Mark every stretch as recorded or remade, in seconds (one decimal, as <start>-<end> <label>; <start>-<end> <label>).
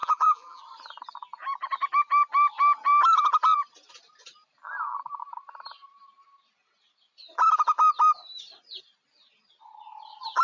0.0-0.6 remade; 0.6-10.4 recorded